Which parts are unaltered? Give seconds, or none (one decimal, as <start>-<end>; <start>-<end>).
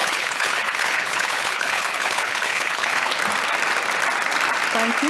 3.1-5.1